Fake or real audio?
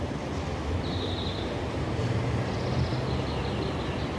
real